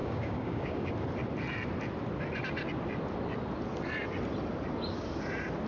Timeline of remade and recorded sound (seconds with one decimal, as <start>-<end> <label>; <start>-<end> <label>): 0.0-0.9 remade; 0.9-5.7 recorded